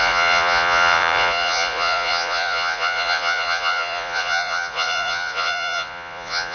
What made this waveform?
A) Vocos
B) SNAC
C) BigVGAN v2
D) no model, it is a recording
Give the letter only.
A